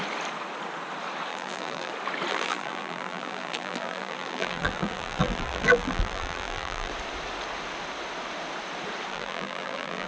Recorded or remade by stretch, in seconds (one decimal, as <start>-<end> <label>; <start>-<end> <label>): 0.0-1.3 recorded; 1.3-1.9 remade; 1.9-2.3 recorded; 2.3-6.9 remade; 6.9-9.1 recorded; 9.1-10.1 remade